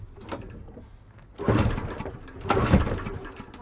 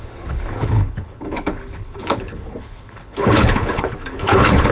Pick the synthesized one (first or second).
second